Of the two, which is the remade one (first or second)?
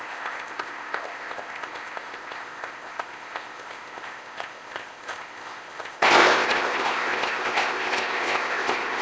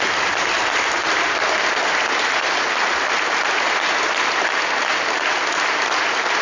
first